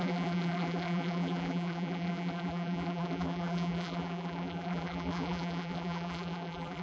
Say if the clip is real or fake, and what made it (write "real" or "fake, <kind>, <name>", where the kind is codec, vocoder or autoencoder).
fake, vocoder, BigVGAN v2